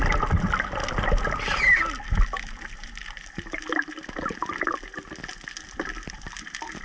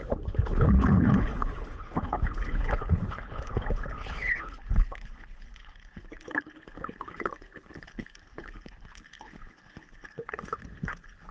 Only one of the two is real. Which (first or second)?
first